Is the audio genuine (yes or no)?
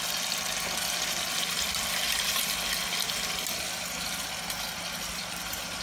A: yes